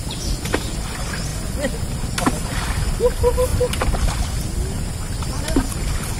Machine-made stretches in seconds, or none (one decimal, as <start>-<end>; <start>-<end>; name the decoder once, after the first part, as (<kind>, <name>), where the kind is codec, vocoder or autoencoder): 3.5-5.4 (vocoder, BigVGAN v2)